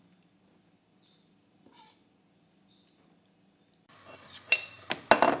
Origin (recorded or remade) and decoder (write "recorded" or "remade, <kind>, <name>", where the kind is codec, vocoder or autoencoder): recorded